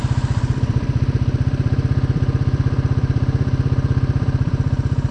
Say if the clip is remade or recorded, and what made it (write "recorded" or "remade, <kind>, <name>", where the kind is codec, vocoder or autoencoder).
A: remade, vocoder, BigVGAN v2